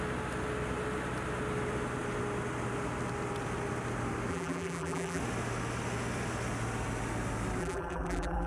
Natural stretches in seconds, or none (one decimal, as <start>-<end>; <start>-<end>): 0.0-4.3; 5.2-7.6